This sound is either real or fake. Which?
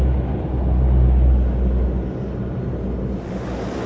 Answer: real